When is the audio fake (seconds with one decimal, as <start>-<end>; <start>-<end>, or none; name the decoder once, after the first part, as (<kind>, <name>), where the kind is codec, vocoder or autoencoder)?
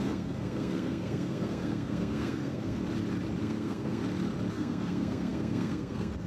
0.0-2.8 (codec, SNAC); 3.4-4.0; 4.5-6.3